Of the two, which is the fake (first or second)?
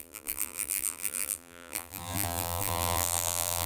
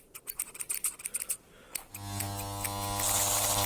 first